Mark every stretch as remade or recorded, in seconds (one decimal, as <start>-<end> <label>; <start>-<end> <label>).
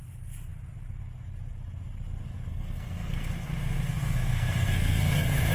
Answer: 0.0-2.5 recorded; 2.5-5.5 remade